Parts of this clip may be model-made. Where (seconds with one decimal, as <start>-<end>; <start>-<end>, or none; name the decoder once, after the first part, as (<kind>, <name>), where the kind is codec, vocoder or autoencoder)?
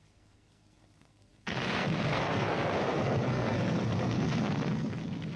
0.0-5.4 (codec, SNAC)